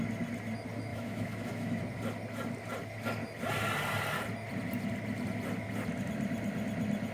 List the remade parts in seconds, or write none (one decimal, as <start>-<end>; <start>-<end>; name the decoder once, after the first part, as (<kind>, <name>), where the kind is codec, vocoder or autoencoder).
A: 0.9-1.8 (autoencoder, DAC-VAE)